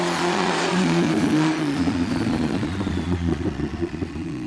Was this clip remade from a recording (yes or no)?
yes